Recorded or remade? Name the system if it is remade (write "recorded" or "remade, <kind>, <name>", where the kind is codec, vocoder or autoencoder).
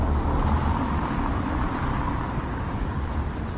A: recorded